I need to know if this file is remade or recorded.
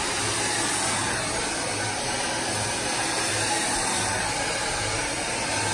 recorded